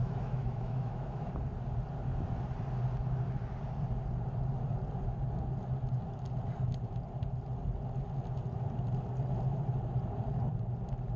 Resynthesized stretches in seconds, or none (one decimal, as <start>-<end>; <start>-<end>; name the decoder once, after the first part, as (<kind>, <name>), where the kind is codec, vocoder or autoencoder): 0.0-1.3 (autoencoder, DAC-VAE)